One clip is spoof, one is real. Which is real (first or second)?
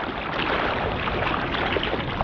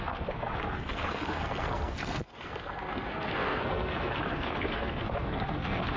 first